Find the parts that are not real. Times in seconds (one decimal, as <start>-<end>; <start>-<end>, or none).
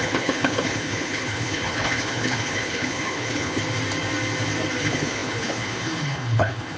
0.0-3.6; 4.8-6.8